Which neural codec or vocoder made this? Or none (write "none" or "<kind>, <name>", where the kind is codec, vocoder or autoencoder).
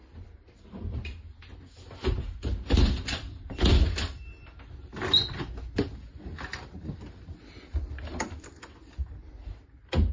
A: none